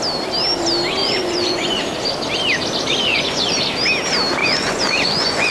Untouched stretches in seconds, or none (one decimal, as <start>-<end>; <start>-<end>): 0.0-1.0; 1.8-3.1; 3.6-4.4